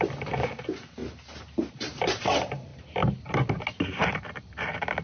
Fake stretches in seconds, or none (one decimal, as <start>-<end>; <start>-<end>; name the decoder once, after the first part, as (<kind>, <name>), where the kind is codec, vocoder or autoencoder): 0.0-1.0 (vocoder, BigVGAN v2); 1.7-2.7; 4.1-5.0